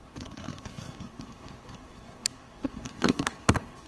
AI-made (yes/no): yes